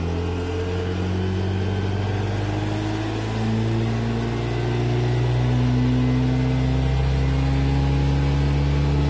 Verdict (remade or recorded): recorded